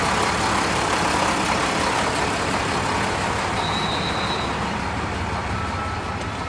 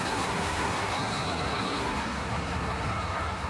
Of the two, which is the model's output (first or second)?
second